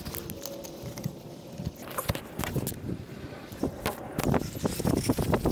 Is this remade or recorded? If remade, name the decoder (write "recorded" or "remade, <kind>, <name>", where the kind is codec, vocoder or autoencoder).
recorded